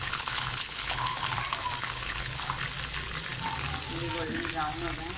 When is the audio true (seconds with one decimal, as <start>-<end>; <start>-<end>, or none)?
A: 1.4-1.8; 2.5-5.2